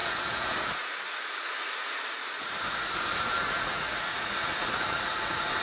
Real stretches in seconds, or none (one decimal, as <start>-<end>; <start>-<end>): none